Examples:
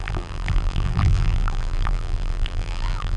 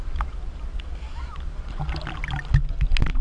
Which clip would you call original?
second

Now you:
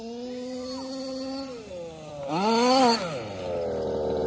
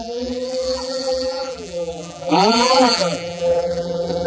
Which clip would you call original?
first